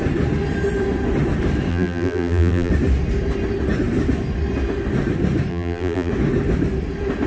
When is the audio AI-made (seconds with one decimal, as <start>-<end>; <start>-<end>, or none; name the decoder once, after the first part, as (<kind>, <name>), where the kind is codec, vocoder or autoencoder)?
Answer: 1.7-2.7 (vocoder, BigVGAN v2); 5.5-6.1